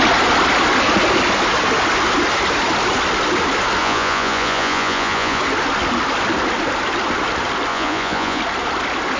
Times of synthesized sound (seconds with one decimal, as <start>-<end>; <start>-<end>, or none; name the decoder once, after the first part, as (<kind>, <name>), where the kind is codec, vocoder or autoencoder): 3.8-5.4 (vocoder, Vocos); 7.7-8.4